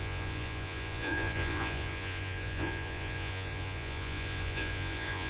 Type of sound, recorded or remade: remade